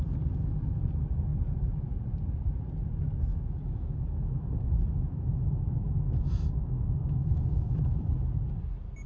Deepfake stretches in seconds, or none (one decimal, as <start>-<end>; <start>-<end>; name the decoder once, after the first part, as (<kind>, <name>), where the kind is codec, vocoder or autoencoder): 3.3-8.1 (autoencoder, DAC-VAE)